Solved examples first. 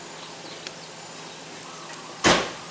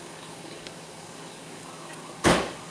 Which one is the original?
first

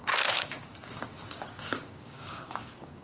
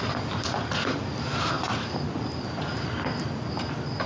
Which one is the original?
second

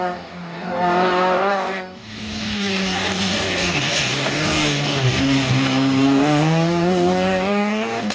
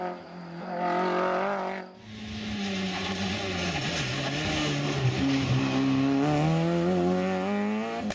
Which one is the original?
second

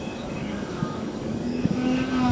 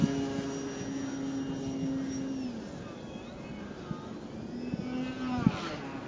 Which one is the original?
second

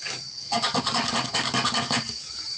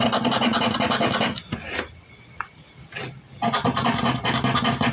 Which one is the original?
second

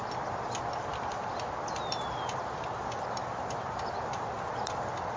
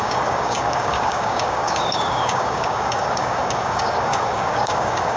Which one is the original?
first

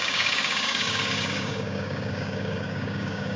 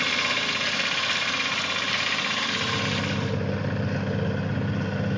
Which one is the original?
second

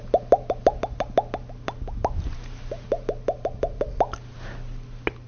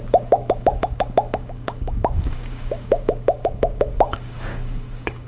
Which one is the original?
first